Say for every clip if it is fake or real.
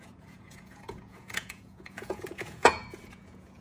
fake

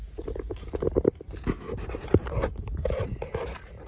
fake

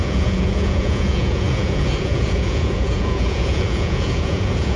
fake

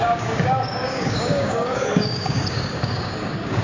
fake